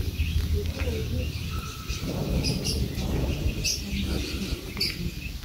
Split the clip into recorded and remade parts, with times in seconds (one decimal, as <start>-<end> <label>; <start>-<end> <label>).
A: 0.0-5.4 recorded